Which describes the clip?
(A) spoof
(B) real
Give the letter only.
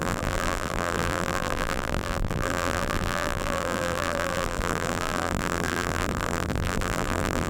A